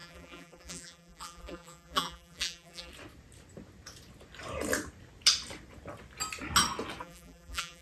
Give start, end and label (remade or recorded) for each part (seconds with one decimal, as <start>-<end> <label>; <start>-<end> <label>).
0.0-2.9 remade; 2.9-7.0 recorded; 7.0-7.8 remade